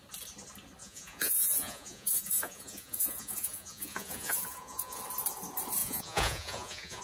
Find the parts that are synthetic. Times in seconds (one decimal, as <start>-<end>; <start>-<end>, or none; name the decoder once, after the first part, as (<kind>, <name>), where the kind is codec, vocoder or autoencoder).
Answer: 0.8-5.0 (vocoder, Vocos); 5.8-7.0